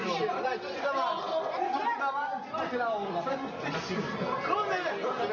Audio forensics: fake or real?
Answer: real